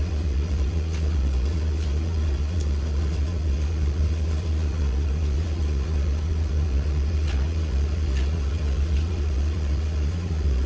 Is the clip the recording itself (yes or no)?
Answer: no